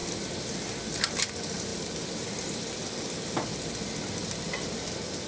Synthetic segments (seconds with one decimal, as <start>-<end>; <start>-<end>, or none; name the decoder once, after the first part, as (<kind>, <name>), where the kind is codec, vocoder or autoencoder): none

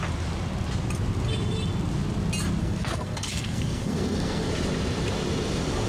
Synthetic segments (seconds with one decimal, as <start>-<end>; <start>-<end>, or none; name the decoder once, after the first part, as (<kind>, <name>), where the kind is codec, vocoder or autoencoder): 2.6-4.5 (codec, SNAC)

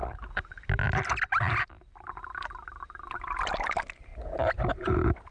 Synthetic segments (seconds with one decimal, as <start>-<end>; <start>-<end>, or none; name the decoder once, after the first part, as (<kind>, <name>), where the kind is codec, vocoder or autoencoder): none

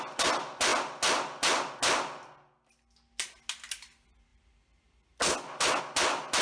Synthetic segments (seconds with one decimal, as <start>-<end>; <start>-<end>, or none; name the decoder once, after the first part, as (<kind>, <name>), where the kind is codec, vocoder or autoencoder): none